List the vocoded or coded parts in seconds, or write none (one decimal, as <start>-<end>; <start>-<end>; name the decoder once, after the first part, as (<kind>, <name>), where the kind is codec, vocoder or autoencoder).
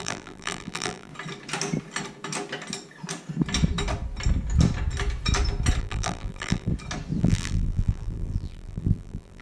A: 0.0-1.1 (vocoder, BigVGAN v2); 5.8-6.7; 7.2-9.4